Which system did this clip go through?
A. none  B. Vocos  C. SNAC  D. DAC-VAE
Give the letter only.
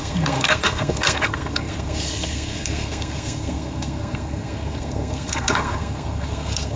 C